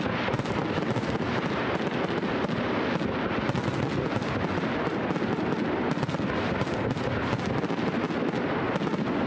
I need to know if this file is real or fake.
real